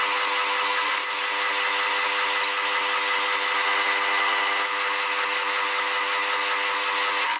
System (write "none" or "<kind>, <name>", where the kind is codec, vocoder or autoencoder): none